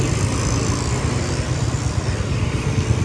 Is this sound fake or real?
real